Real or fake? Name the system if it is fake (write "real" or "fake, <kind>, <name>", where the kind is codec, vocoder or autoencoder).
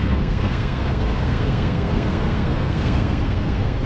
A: fake, codec, SNAC